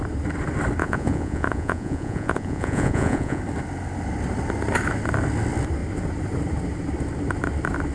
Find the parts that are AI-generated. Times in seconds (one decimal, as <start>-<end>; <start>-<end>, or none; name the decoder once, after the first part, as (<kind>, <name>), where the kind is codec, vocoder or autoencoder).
0.8-3.4 (vocoder, Vocos)